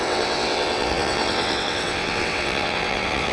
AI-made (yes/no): yes